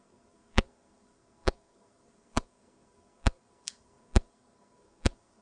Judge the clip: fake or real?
fake